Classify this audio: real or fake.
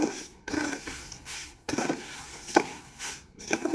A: fake